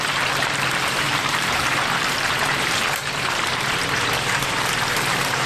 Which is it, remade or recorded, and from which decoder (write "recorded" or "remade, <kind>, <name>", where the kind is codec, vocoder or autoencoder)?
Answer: remade, vocoder, BigVGAN v2